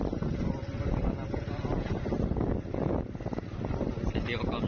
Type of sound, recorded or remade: recorded